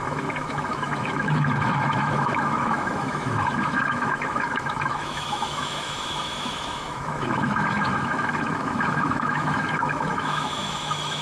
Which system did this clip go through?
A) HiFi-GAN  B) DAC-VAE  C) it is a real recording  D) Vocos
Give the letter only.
B